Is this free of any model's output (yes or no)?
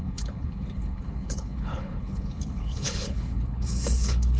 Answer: no